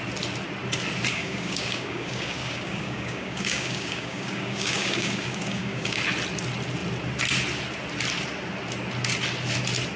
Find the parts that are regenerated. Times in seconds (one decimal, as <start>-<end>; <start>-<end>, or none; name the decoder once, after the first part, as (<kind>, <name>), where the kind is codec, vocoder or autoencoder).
1.1-6.0 (codec, DAC)